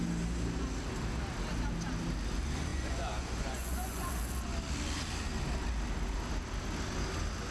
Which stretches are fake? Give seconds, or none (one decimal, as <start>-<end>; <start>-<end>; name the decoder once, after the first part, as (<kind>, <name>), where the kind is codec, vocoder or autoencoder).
2.7-4.1 (vocoder, Vocos)